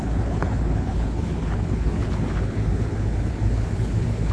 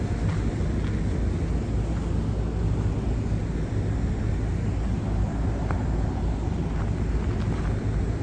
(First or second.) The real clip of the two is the second